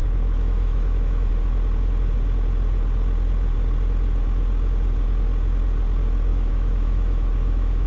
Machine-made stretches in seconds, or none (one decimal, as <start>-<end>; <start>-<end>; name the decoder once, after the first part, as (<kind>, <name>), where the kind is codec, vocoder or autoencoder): 0.0-1.3 (autoencoder, DAC-VAE); 6.3-7.9

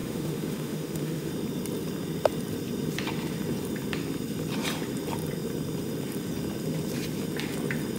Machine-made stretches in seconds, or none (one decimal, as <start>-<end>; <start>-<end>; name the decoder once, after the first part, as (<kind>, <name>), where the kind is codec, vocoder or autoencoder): 0.0-1.3 (autoencoder, DAC-VAE)

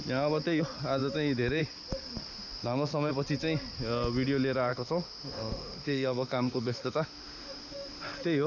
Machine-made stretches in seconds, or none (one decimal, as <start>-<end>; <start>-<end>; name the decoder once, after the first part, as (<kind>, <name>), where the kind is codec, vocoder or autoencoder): 2.3-3.1 (autoencoder, DAC-VAE); 4.7-8.0

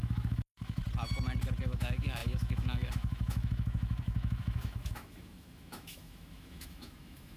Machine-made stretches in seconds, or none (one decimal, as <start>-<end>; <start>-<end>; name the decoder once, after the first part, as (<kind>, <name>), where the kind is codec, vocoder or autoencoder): 0.0-0.8 (autoencoder, DAC-VAE); 1.6-7.4

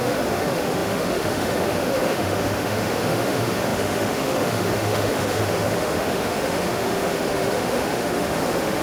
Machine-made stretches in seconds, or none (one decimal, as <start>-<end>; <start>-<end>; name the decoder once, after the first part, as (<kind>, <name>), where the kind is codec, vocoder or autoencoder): 0.0-8.8 (autoencoder, DAC-VAE)

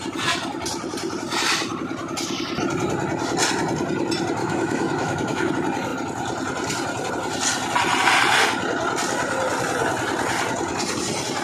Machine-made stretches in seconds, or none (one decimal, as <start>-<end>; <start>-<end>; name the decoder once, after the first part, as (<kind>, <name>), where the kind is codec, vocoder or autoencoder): 4.4-5.5 (autoencoder, DAC-VAE)

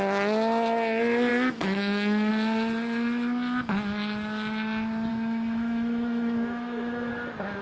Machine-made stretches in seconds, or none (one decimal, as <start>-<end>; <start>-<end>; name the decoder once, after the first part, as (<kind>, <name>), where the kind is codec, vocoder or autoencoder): 1.3-2.3 (autoencoder, DAC-VAE); 5.1-7.1